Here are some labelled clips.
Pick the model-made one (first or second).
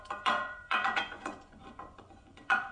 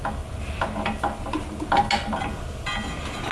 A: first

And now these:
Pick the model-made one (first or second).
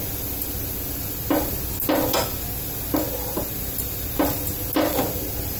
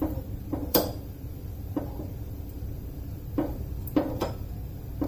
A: second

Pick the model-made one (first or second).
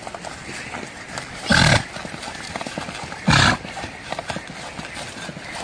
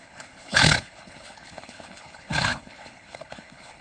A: second